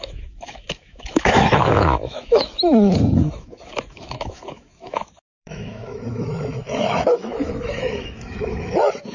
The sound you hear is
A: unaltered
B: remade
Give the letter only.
B